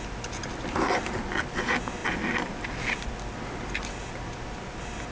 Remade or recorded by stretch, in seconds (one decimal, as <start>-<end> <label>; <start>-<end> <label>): 0.0-5.1 recorded